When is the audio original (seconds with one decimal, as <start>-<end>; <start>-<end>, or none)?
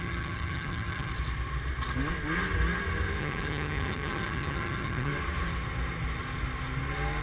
1.1-3.2; 5.1-7.2